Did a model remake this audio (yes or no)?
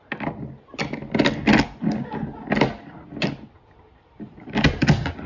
no